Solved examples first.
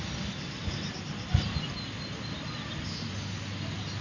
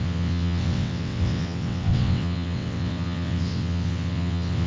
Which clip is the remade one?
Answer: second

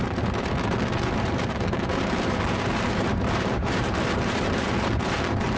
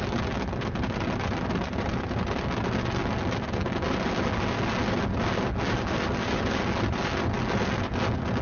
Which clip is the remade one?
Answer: first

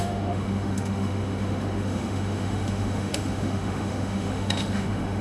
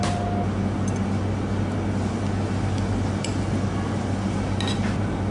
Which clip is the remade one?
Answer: first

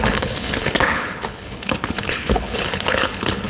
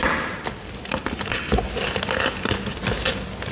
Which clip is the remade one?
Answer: first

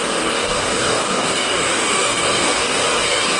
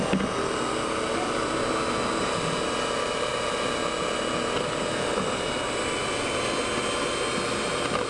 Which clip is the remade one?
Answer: first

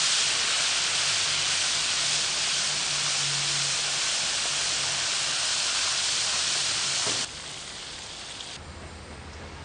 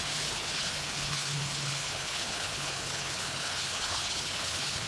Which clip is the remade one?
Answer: second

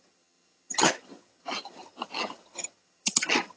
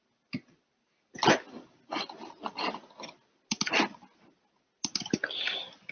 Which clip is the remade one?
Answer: first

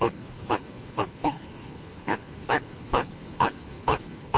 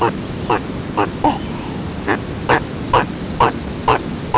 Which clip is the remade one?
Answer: first